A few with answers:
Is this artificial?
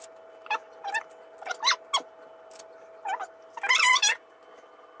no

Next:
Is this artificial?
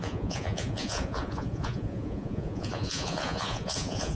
yes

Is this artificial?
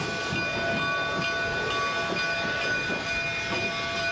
no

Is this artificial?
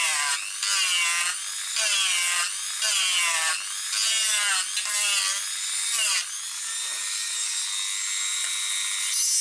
no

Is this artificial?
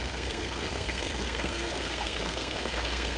yes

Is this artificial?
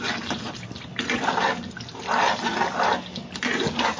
no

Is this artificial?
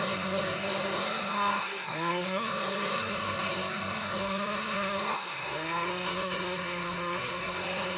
yes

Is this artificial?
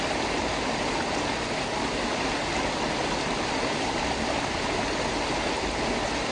no